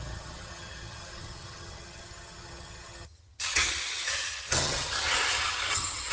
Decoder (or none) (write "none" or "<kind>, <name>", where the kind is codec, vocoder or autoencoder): vocoder, HiFi-GAN